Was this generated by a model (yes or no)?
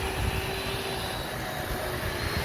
no